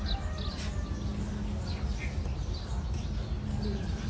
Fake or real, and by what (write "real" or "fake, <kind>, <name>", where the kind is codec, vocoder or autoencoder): real